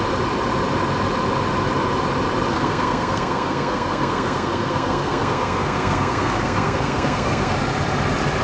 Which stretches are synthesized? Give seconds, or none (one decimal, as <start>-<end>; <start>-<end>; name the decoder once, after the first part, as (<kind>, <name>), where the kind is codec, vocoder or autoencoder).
2.5-7.5 (codec, SNAC)